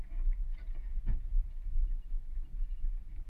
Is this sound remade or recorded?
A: remade